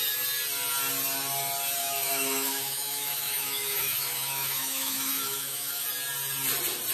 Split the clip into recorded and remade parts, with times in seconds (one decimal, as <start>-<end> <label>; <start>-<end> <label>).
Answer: 0.0-1.8 recorded; 1.8-5.9 remade; 5.9-6.9 recorded